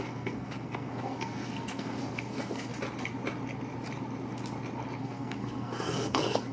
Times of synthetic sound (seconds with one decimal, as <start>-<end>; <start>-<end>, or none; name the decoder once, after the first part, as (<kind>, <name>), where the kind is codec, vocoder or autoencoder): 0.0-2.7 (codec, SNAC); 5.0-6.5